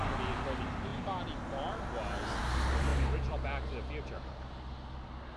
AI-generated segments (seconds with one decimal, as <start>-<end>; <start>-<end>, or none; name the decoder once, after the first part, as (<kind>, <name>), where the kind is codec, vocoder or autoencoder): none